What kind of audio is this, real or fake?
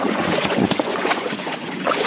fake